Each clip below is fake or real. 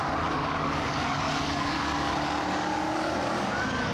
fake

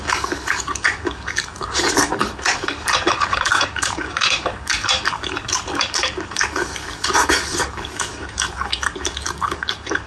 fake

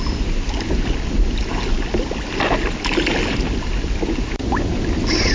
real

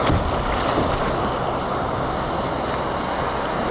real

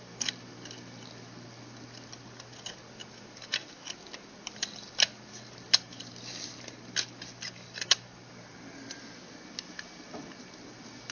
real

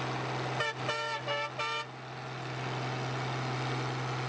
real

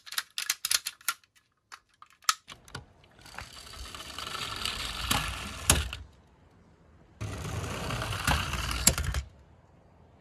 real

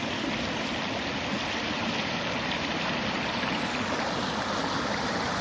real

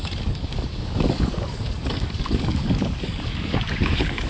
fake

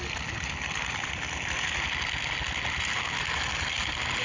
real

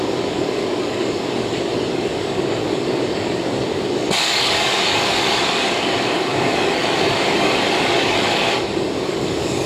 fake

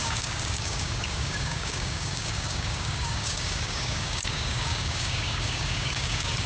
fake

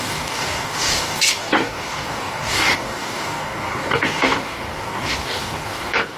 fake